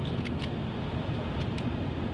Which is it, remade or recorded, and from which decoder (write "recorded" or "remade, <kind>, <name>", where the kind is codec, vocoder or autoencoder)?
recorded